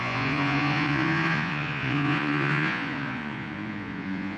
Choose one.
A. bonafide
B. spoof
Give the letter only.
B